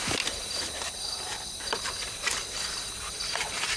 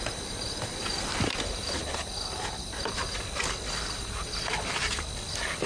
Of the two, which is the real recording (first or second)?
second